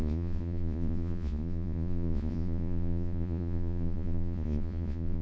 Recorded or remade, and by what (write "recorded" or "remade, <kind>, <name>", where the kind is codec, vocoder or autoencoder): remade, vocoder, Vocos